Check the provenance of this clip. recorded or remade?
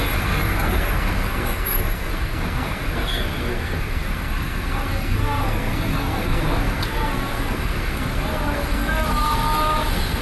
remade